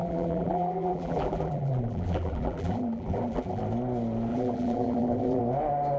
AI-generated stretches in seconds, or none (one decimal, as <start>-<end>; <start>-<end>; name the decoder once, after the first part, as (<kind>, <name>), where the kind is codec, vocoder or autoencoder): 0.0-3.6 (vocoder, BigVGAN v2); 4.3-5.4